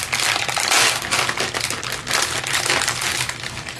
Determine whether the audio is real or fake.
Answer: real